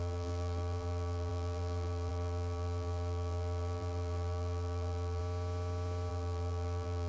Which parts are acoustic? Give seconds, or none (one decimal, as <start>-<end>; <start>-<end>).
5.2-6.1